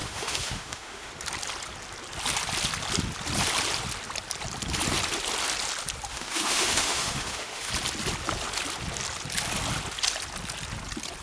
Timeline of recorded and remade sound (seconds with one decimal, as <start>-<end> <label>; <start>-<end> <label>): 0.0-1.1 remade; 1.1-6.1 recorded; 6.1-7.7 remade; 7.7-11.2 recorded